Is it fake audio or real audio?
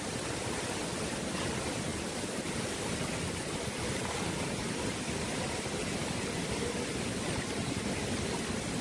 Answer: real